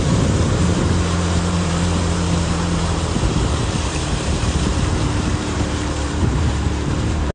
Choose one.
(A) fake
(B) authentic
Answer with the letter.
A